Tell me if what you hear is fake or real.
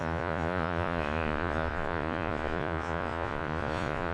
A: fake